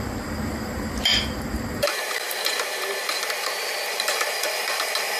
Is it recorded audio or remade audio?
remade